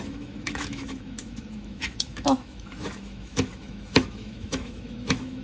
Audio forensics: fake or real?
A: fake